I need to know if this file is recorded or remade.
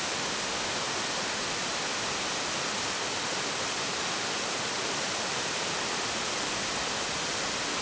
recorded